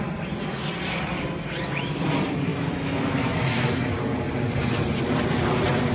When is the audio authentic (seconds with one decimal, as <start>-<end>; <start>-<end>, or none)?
0.0-2.5; 3.9-5.9